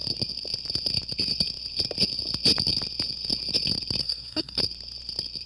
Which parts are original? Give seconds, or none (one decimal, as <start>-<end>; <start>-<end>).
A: 0.0-4.0; 4.6-5.5